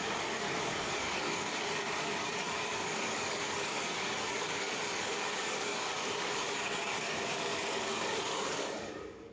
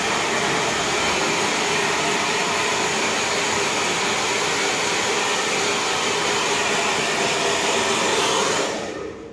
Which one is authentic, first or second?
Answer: second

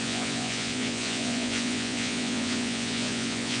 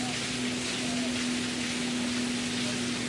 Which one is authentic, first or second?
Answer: second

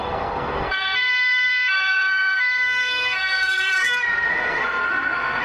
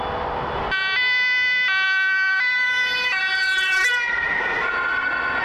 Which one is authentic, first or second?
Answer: second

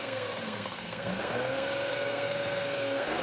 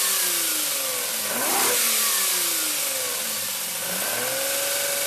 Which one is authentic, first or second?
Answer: second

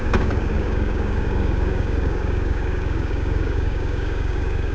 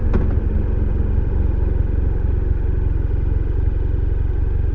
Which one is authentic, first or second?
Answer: second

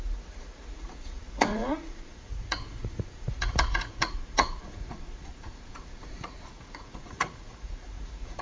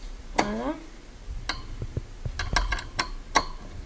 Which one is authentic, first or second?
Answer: second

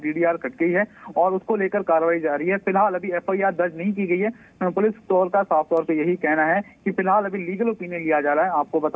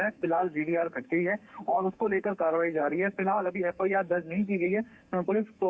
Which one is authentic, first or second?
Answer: first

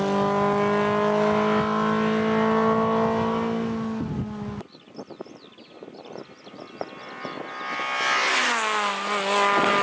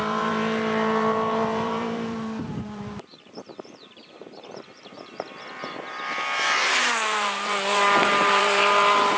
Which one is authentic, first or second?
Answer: first